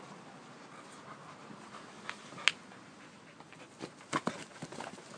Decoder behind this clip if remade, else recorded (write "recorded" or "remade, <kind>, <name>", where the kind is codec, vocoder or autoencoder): recorded